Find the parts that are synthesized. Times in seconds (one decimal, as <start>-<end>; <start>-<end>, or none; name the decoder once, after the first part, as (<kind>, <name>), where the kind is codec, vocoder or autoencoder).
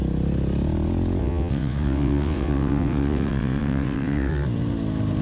1.2-4.3 (vocoder, WaveNeXt)